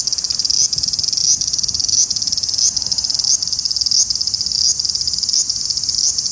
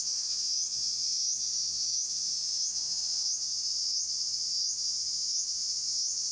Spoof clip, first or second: second